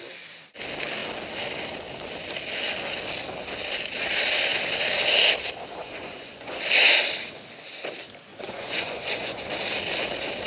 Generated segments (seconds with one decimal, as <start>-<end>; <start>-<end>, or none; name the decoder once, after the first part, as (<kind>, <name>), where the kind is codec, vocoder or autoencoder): 5.8-6.6 (vocoder, Vocos); 8.3-9.5